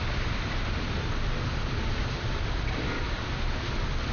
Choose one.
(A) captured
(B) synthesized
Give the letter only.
B